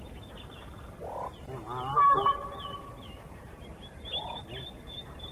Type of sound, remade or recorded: recorded